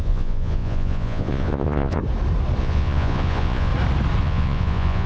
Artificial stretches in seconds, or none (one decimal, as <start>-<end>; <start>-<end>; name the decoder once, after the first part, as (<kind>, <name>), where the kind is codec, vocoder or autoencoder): 0.0-2.0 (vocoder, Vocos); 2.6-3.7; 4.2-5.1